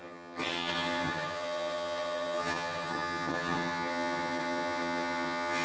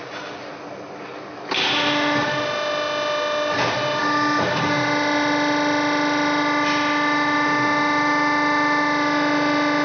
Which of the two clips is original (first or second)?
second